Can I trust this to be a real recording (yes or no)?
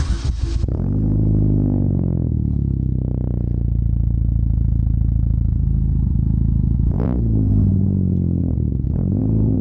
yes